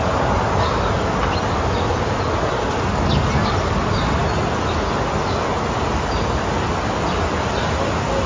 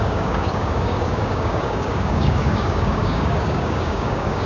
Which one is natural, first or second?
first